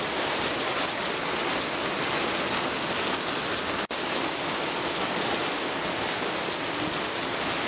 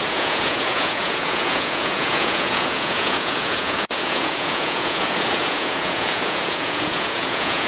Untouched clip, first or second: first